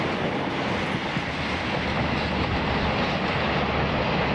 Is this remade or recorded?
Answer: recorded